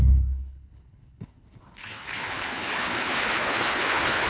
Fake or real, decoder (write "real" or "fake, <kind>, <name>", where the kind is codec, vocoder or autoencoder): fake, codec, HILCodec